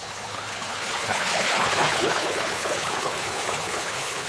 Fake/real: fake